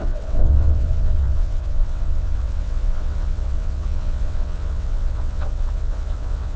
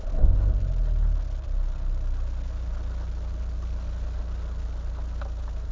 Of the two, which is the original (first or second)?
second